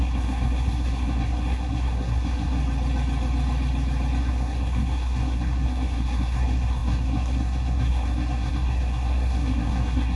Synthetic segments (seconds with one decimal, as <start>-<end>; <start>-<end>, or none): 0.0-2.6; 4.2-10.2